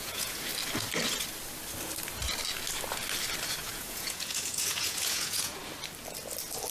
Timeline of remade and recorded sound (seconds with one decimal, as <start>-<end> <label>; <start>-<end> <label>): 0.0-0.5 remade; 0.5-3.6 recorded; 3.6-5.6 remade; 5.6-6.7 recorded